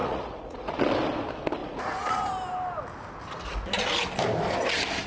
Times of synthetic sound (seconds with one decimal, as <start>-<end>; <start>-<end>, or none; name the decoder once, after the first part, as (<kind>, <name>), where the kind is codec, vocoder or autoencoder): 0.0-0.8 (vocoder, Vocos); 1.6-2.3